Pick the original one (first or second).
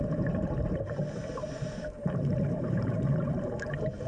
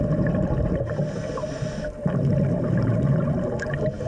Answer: second